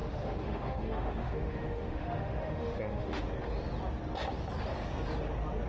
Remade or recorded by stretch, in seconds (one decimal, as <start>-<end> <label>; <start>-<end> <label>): 0.0-3.2 remade; 3.2-5.7 recorded